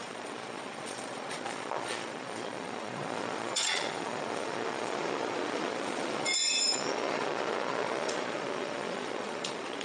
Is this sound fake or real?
fake